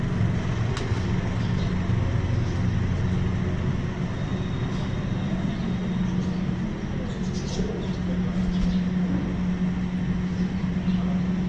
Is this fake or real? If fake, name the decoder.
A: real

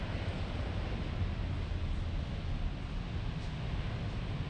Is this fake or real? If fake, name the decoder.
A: real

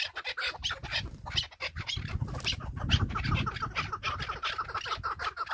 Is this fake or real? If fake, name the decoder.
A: real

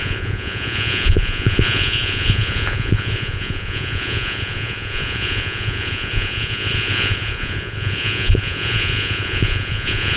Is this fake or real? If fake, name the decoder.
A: fake, vocoder, Vocos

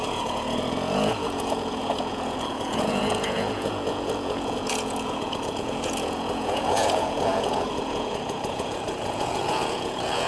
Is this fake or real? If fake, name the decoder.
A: fake, vocoder, Vocos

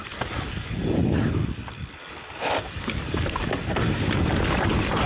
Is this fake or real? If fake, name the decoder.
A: real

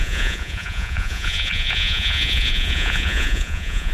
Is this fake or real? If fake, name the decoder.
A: fake, vocoder, Vocos